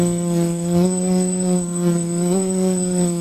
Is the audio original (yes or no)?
no